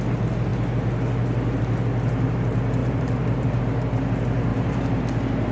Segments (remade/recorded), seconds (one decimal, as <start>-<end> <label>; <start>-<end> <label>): 0.0-2.8 recorded; 2.8-3.6 remade; 3.6-4.5 recorded; 4.5-5.0 remade; 5.0-5.5 recorded